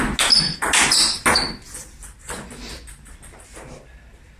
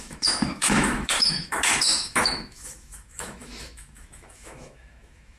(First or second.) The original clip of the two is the first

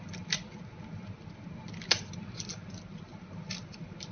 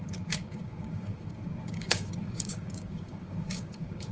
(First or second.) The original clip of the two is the first